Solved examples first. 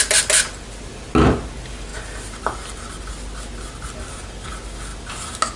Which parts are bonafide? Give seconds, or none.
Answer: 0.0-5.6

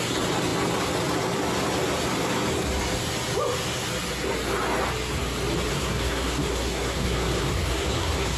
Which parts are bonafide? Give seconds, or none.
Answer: 0.0-5.7

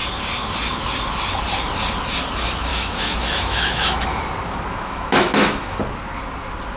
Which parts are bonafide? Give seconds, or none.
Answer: 0.0-2.7; 4.2-4.7; 5.8-6.8